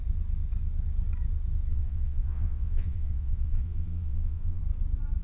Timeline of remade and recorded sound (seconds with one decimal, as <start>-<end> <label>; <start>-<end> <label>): 0.0-1.7 recorded; 1.7-4.6 remade; 4.6-5.2 recorded